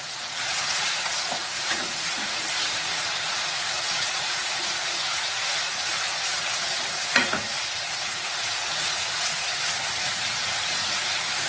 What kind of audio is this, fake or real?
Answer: fake